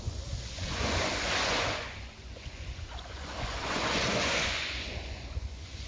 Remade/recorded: remade